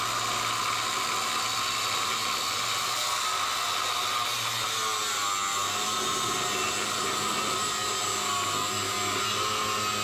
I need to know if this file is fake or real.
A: real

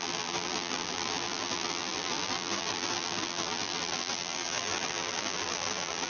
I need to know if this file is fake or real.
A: fake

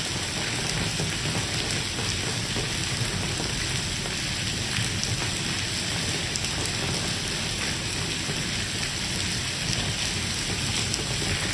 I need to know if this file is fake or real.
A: real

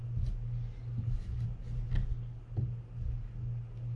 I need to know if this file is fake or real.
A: real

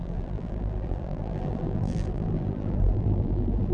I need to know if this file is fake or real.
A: fake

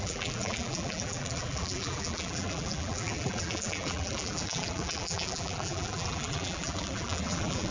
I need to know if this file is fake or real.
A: fake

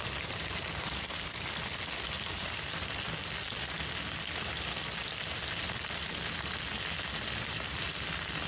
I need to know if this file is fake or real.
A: real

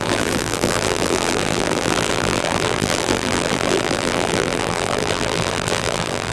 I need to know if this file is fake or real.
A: fake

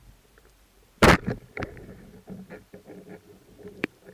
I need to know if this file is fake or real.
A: fake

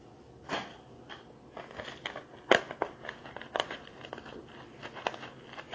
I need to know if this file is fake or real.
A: real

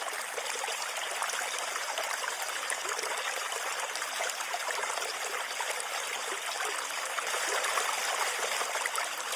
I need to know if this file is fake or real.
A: real